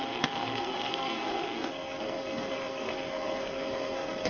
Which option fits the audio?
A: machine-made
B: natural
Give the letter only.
A